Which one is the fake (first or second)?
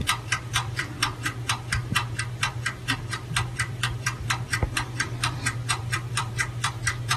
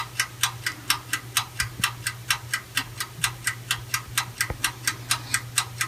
first